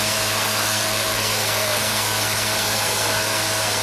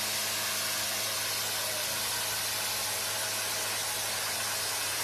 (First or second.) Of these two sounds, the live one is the second